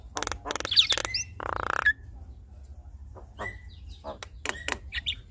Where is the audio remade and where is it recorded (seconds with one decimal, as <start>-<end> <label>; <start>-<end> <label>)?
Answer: 0.0-5.3 recorded